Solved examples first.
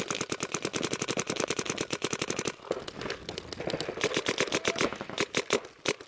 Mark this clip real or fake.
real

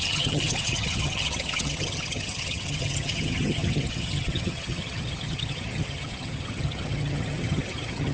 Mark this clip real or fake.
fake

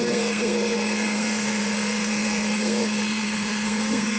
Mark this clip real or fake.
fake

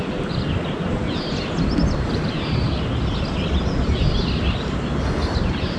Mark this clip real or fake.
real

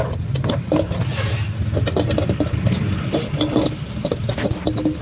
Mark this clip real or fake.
real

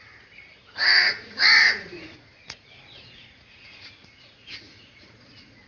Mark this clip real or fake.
fake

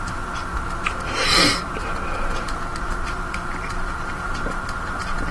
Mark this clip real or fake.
fake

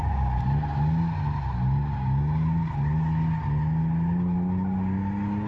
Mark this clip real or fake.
real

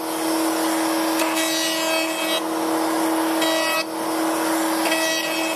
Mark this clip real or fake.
real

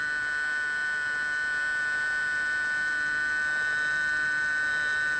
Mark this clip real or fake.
real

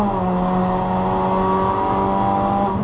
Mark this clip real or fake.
real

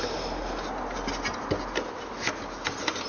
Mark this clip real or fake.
real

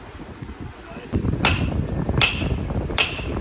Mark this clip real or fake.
real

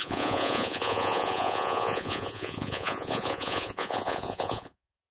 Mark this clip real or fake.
fake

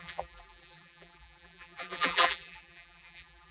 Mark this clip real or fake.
fake